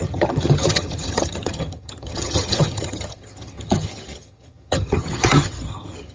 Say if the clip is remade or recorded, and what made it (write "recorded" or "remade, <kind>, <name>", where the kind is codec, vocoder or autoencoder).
remade, vocoder, HiFi-GAN